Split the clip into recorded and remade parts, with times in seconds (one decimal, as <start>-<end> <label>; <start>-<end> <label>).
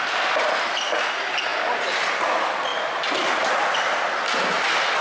0.0-5.0 recorded